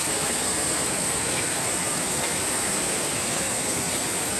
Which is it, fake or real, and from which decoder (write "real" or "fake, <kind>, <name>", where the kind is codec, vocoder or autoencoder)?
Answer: fake, codec, SNAC